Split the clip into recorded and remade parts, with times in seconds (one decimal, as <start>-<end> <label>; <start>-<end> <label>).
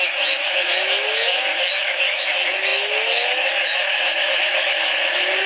0.0-5.5 remade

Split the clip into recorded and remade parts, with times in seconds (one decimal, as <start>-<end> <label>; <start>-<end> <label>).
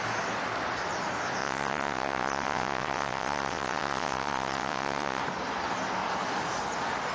0.0-1.4 recorded; 1.4-5.2 remade; 5.2-7.1 recorded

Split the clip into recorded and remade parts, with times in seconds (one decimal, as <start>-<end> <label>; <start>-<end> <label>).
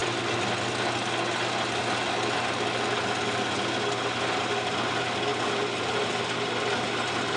0.0-7.4 recorded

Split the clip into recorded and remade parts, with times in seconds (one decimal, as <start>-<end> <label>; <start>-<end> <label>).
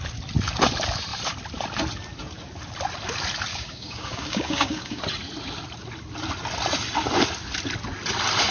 0.0-3.5 recorded; 3.5-5.0 remade; 5.0-8.5 recorded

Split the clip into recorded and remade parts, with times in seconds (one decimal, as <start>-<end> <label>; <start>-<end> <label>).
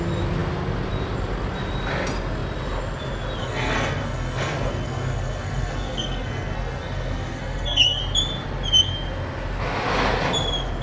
0.0-3.4 recorded; 3.4-8.0 remade; 8.0-10.8 recorded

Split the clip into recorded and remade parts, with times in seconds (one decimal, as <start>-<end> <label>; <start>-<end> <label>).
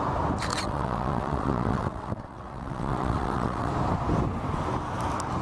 0.0-0.5 recorded; 0.5-3.7 remade; 3.7-5.4 recorded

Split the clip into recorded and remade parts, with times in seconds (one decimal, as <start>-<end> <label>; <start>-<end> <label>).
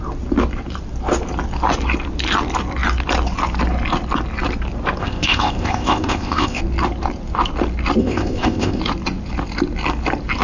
0.0-5.0 recorded; 5.0-6.6 remade; 6.6-8.0 recorded; 8.0-8.8 remade; 8.8-10.4 recorded